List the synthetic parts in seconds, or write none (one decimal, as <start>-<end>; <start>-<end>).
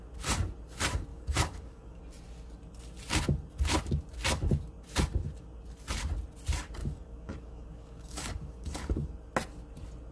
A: 1.1-2.0; 6.8-9.1